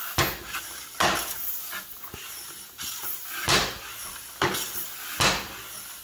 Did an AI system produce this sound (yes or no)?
no